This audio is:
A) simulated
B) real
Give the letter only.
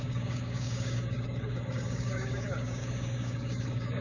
A